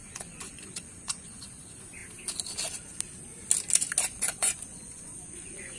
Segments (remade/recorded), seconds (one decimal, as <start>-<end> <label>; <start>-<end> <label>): 0.0-2.0 remade; 2.0-4.0 recorded; 4.0-5.8 remade